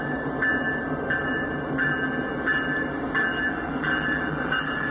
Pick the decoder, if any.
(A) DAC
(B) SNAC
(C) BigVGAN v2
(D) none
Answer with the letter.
D